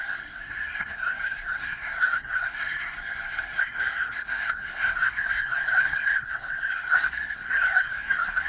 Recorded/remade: remade